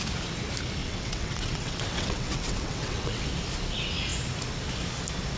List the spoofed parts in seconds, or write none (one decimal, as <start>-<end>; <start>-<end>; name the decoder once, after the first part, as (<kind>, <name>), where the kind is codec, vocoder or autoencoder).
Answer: 0.8-3.2 (vocoder, WaveNeXt)

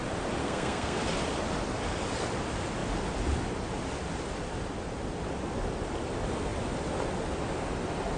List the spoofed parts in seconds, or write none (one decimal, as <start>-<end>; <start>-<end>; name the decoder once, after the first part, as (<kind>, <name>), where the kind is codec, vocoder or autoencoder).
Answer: 0.4-1.0 (codec, SNAC)

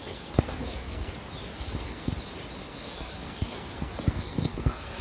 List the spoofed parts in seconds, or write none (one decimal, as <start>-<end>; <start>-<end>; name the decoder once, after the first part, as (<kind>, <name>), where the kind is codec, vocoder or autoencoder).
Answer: 0.0-1.1 (codec, SNAC); 1.5-2.1; 2.6-5.0

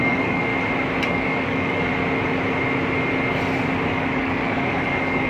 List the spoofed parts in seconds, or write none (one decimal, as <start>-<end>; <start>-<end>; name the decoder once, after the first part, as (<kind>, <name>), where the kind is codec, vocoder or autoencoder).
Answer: 0.0-0.5 (codec, DAC); 1.1-1.9; 3.9-5.3

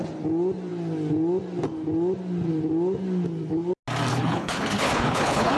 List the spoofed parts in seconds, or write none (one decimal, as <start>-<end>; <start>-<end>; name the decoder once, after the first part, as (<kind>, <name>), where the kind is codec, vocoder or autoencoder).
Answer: 4.1-5.6 (codec, HILCodec)

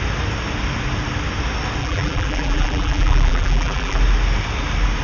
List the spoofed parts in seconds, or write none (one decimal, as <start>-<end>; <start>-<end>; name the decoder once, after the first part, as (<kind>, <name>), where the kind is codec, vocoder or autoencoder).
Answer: 1.8-4.0 (vocoder, BigVGAN v2)

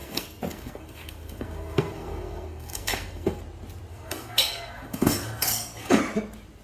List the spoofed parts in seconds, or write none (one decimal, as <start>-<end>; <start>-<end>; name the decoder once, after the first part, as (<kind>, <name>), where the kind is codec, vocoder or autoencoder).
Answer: 0.0-3.4 (codec, SNAC); 3.9-6.0